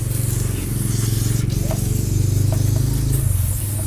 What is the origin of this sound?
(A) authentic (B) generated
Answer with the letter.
A